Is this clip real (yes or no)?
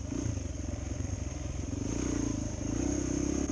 no